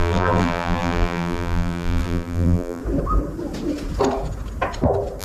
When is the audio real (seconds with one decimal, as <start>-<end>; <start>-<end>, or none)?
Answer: 2.8-5.2